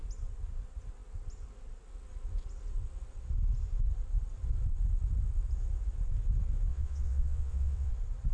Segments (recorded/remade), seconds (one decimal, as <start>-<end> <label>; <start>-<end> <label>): 0.0-6.7 recorded; 6.7-7.9 remade; 7.9-8.3 recorded